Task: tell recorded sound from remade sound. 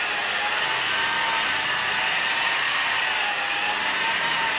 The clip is recorded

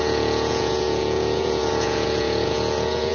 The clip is remade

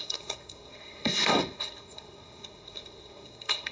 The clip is remade